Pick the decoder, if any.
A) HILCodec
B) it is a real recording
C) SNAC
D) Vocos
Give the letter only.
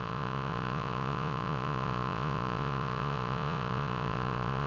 D